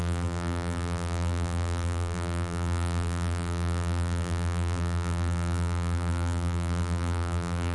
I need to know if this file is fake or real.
fake